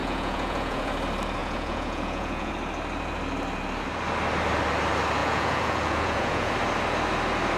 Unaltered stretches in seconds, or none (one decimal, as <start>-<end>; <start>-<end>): 0.9-1.4; 2.5-5.2; 6.5-7.6